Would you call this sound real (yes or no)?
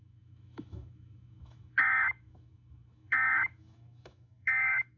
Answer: no